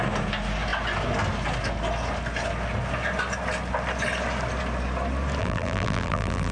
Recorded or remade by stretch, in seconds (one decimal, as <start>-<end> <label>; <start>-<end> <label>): 0.0-5.4 recorded; 5.4-6.5 remade